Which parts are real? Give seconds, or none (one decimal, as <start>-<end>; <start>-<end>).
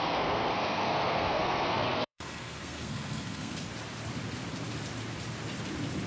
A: 3.7-6.1